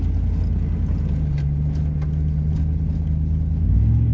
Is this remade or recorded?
recorded